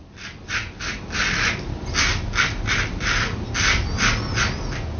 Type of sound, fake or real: real